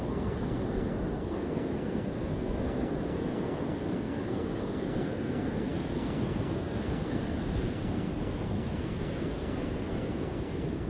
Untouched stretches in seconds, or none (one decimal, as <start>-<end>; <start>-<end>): none